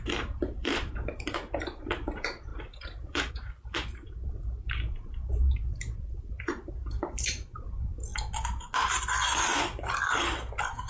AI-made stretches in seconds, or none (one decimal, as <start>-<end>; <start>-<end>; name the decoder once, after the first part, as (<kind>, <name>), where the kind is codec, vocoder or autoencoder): 0.0-8.1 (vocoder, BigVGAN v2)